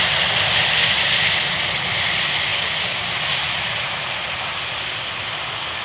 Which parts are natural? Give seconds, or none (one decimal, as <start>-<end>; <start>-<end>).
0.0-5.8